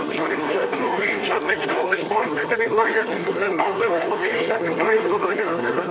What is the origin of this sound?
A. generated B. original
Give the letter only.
A